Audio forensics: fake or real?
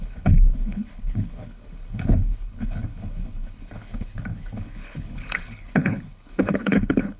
fake